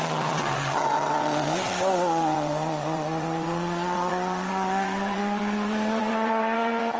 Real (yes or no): no